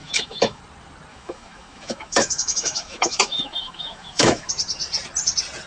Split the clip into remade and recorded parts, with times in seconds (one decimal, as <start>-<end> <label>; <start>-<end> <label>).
0.0-0.6 remade; 0.6-1.1 recorded; 1.1-4.5 remade; 4.5-5.7 recorded